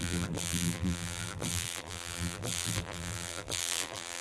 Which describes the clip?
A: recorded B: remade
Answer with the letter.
B